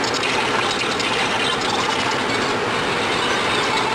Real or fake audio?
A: real